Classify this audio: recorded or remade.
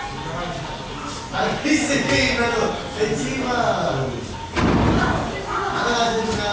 recorded